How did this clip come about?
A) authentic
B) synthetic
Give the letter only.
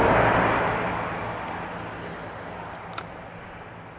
A